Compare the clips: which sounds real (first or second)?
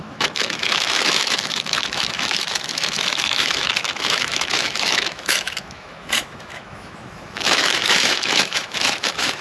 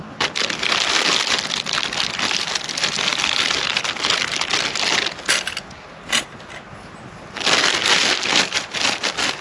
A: second